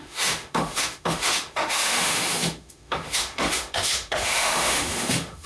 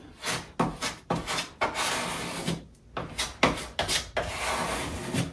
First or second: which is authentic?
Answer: second